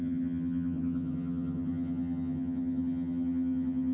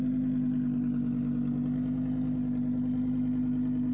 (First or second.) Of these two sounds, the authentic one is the second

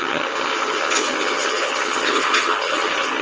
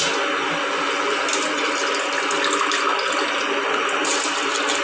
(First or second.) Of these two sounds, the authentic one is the second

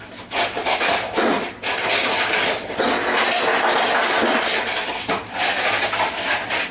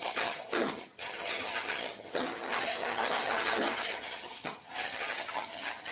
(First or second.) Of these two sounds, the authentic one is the first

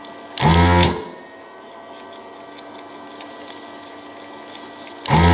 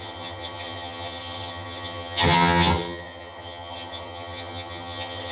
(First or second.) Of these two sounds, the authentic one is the first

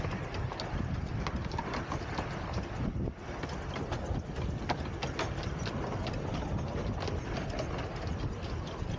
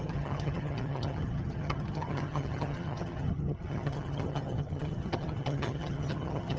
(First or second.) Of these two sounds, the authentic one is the first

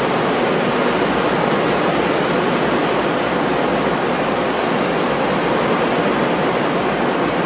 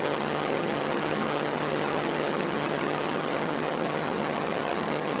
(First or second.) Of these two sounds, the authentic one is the first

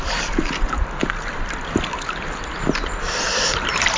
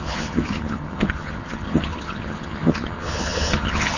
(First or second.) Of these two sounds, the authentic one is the first